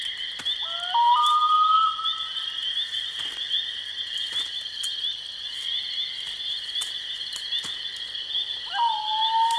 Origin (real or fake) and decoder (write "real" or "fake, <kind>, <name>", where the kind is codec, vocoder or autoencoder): real